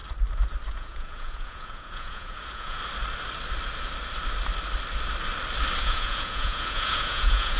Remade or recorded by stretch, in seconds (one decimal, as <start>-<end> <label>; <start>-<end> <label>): 0.0-0.7 recorded; 0.7-2.8 remade; 2.8-5.8 recorded; 5.8-7.6 remade